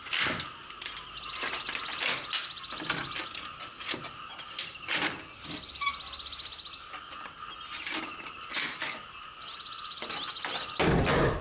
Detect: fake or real real